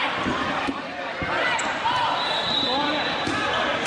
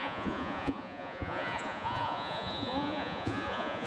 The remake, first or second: second